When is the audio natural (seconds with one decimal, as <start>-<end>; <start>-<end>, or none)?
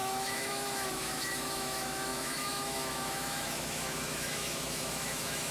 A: none